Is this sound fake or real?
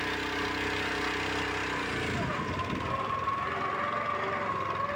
real